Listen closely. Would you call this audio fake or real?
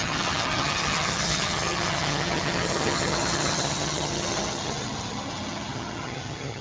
fake